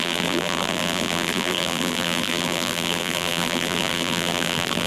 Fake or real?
fake